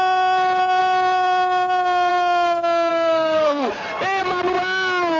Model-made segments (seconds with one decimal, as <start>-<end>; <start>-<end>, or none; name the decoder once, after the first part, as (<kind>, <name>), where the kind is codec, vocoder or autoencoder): 2.9-3.7 (codec, SNAC)